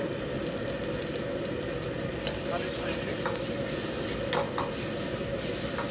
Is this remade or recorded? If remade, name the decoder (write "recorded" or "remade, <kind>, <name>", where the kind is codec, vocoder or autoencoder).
recorded